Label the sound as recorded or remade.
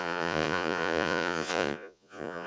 remade